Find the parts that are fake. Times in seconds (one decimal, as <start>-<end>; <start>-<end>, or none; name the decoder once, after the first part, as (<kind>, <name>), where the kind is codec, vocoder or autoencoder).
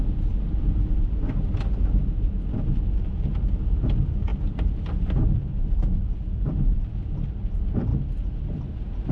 none